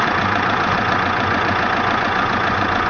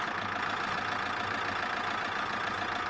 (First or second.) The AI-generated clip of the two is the first